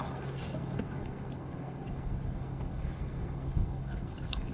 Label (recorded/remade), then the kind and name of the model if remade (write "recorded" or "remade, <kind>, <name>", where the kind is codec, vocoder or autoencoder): remade, codec, SNAC